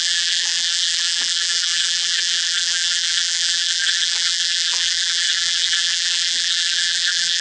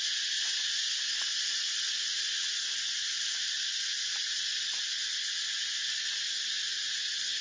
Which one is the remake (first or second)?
first